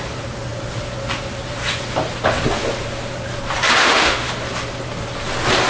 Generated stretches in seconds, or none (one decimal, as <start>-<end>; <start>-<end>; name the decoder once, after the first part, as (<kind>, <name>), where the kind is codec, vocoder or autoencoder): 3.8-4.3 (autoencoder, DAC-VAE)